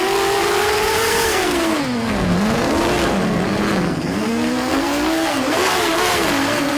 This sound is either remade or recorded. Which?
remade